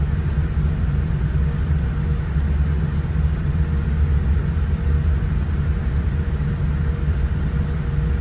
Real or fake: real